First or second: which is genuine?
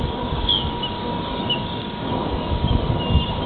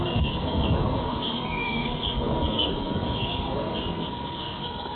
first